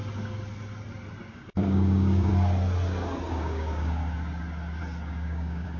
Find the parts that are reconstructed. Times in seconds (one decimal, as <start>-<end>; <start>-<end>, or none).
1.3-2.3; 3.3-4.0; 5.1-5.8